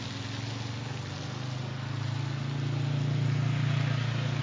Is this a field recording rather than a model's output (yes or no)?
yes